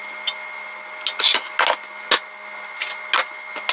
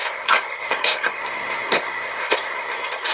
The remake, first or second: second